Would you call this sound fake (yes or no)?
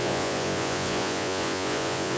yes